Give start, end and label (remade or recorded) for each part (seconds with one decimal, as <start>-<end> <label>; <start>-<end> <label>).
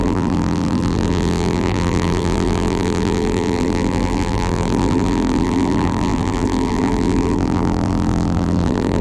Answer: 0.0-9.0 remade